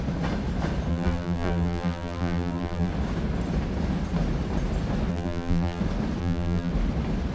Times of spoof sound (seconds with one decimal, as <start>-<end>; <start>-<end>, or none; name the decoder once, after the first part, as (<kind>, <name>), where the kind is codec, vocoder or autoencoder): 0.9-2.9 (vocoder, BigVGAN v2); 5.1-5.8; 6.2-6.7